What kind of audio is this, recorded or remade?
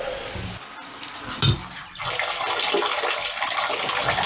recorded